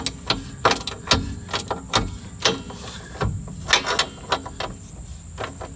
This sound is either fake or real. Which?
real